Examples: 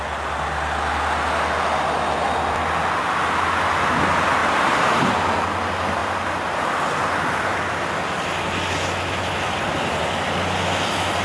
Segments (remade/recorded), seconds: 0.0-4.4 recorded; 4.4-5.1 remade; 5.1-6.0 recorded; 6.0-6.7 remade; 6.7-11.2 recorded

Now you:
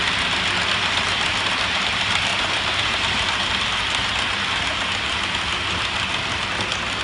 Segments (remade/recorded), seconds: 0.0-2.3 recorded; 2.3-3.5 remade; 3.5-7.0 recorded